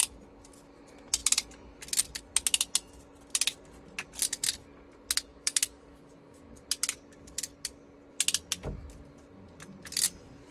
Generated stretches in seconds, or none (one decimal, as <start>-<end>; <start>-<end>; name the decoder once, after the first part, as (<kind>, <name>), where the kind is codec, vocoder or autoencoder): 5.3-6.6 (codec, DAC)